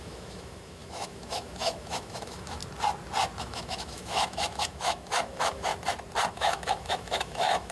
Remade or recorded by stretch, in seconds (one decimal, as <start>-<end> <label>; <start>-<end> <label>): 0.0-2.6 remade; 2.6-3.4 recorded; 3.4-5.7 remade; 5.7-6.3 recorded; 6.3-7.7 remade